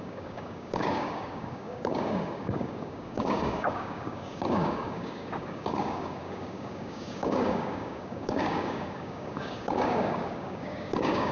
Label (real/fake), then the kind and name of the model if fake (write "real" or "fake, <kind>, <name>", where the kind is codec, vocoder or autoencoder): fake, codec, DAC